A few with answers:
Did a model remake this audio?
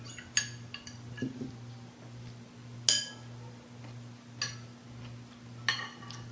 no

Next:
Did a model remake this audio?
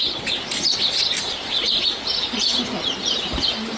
no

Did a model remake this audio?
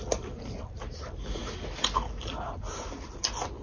no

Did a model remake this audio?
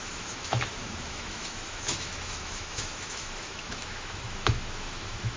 yes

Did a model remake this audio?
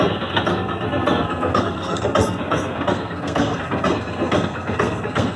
yes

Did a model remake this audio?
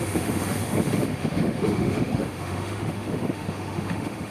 yes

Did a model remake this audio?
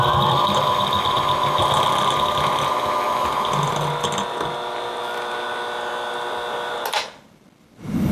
no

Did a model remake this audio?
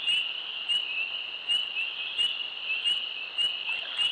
no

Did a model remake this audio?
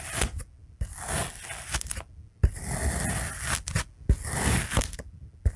no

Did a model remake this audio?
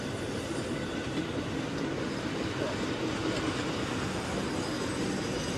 no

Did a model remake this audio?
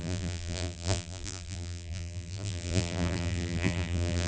yes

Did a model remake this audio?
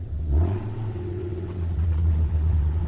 yes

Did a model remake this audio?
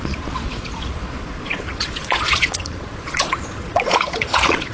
yes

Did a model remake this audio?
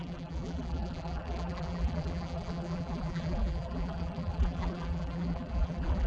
yes